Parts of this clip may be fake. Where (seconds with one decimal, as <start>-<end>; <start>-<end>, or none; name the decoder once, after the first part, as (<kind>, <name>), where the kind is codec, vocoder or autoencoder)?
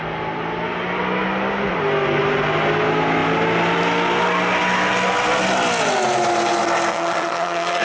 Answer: 6.9-7.8 (vocoder, Vocos)